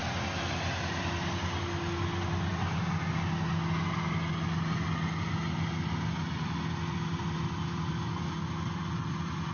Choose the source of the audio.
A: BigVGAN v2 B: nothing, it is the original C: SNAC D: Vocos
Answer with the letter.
B